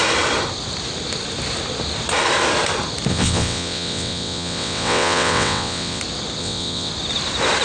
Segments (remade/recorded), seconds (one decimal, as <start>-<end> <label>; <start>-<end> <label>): 0.0-3.1 recorded; 3.1-6.0 remade; 6.0-6.4 recorded; 6.4-6.9 remade; 6.9-7.6 recorded